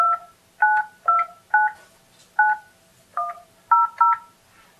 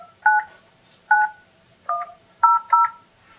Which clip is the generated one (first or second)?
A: second